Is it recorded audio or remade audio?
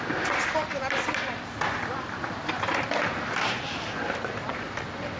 recorded